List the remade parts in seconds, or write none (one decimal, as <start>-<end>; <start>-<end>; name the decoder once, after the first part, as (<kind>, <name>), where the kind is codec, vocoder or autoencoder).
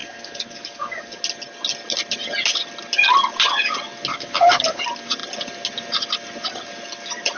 0.0-1.2 (codec, DAC); 4.1-4.8